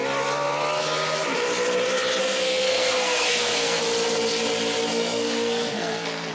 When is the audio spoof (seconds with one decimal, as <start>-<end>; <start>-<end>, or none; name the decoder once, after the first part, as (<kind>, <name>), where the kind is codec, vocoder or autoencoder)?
2.2-3.8 (codec, SNAC); 4.9-6.3